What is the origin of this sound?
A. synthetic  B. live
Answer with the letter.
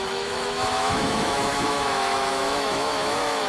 A